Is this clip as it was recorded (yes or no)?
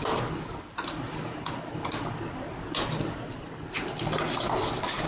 yes